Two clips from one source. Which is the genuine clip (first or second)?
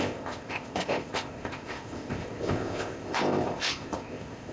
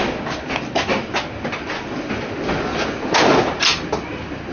second